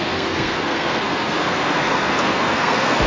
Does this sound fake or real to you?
fake